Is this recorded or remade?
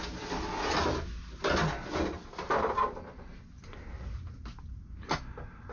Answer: recorded